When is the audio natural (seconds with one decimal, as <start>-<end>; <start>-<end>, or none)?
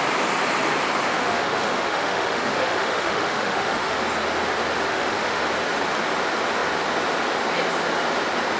0.0-1.1; 4.0-4.9; 5.4-8.6